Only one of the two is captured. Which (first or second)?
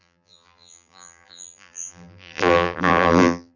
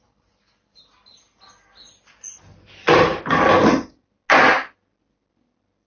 second